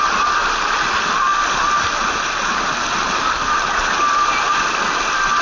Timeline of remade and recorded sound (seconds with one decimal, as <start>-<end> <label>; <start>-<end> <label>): 0.0-5.4 recorded